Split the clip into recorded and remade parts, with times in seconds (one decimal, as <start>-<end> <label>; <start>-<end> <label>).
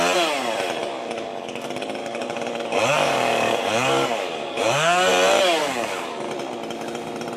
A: 0.0-0.8 recorded; 0.8-5.1 remade; 5.1-5.6 recorded; 5.6-6.3 remade; 6.3-7.4 recorded